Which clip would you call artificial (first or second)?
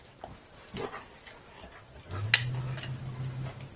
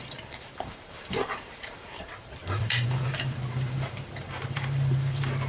second